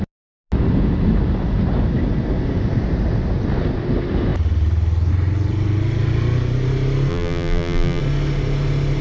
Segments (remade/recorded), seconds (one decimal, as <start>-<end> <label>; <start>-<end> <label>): 0.0-7.1 recorded; 7.1-8.0 remade; 8.0-9.0 recorded